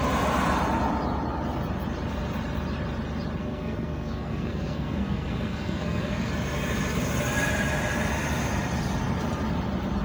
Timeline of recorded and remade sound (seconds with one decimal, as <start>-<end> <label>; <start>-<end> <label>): 0.0-3.4 recorded; 3.4-6.3 remade; 6.3-10.0 recorded